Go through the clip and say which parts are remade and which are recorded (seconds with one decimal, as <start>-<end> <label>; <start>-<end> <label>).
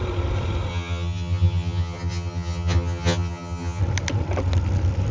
0.0-0.7 recorded; 0.7-3.8 remade; 3.8-5.1 recorded